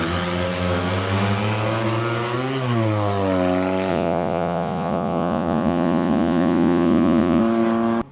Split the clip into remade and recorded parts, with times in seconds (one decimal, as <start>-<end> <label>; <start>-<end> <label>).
0.0-3.9 recorded; 3.9-7.4 remade; 7.4-8.1 recorded